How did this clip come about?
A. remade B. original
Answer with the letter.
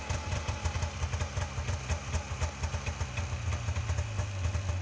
B